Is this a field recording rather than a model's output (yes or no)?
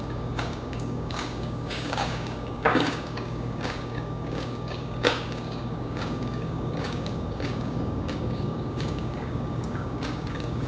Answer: no